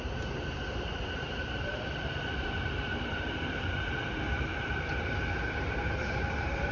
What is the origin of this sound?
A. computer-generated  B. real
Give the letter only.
A